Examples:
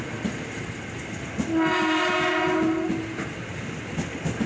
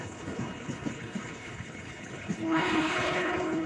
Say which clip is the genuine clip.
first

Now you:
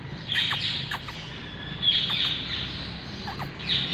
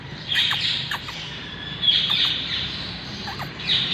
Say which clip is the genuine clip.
first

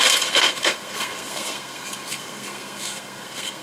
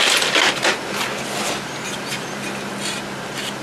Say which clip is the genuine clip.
second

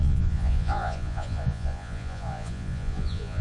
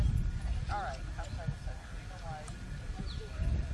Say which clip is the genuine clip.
second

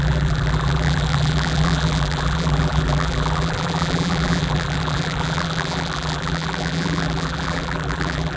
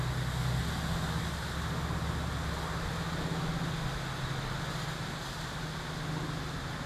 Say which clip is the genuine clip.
second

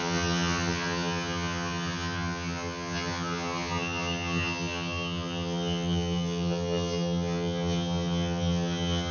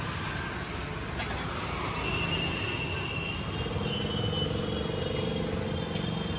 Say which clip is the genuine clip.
second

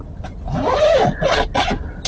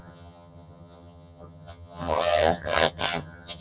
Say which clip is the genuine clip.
first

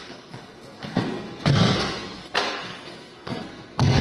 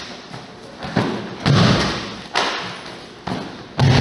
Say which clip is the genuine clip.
second